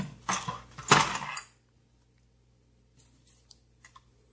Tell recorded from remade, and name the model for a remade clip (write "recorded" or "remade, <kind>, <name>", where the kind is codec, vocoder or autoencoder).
recorded